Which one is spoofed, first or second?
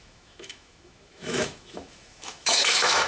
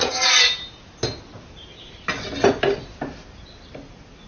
first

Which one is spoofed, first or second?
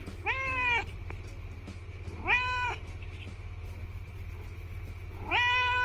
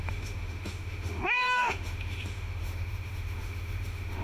second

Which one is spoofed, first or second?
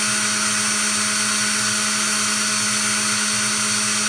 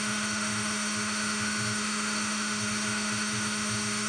second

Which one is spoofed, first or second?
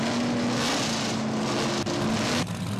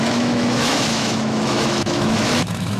second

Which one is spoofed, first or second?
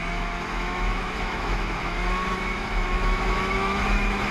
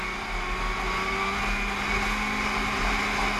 first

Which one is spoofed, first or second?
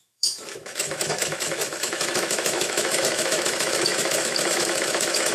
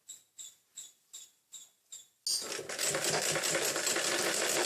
first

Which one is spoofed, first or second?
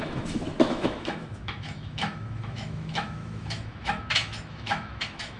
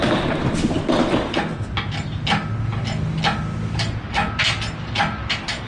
first